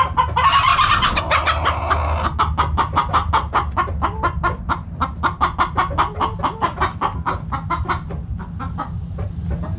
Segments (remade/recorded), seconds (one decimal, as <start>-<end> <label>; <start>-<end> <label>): 0.0-9.8 recorded